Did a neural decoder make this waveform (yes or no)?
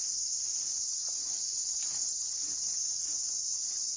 no